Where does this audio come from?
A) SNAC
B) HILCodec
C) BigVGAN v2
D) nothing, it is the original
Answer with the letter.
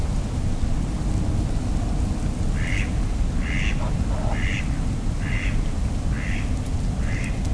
D